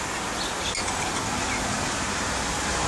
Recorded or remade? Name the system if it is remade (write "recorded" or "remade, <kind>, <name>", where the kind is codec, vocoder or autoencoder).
recorded